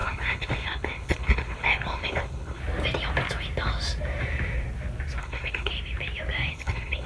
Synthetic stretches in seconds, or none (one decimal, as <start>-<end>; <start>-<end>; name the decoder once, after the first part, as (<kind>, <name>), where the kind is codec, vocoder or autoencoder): 0.0-2.6 (codec, HILCodec); 5.2-5.7; 6.5-7.1